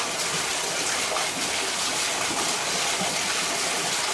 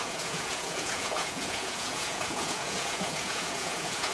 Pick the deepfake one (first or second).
second